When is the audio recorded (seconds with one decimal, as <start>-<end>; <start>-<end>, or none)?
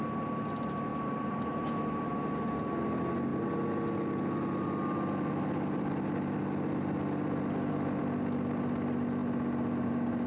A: 0.0-0.9; 2.1-10.3